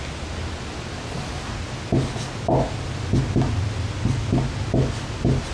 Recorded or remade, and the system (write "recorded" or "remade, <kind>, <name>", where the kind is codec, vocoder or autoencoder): recorded